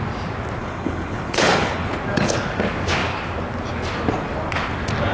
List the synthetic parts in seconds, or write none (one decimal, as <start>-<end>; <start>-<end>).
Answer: 0.6-1.9